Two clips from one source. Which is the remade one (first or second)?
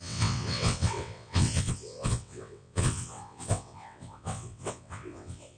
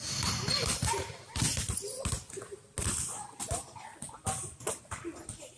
first